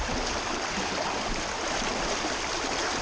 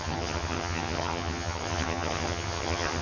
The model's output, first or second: second